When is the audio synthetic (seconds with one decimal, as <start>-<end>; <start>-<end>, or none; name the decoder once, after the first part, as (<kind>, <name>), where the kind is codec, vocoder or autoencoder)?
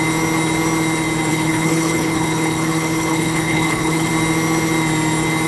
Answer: 1.3-4.1 (codec, HILCodec)